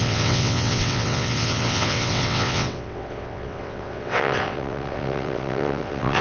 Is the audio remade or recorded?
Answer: remade